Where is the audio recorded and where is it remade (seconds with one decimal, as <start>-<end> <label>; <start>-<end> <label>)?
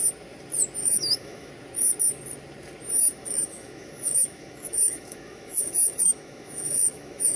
0.0-0.8 recorded; 0.8-1.5 remade; 1.5-3.0 recorded; 3.0-7.4 remade